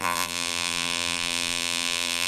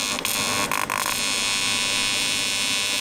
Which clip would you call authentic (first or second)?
second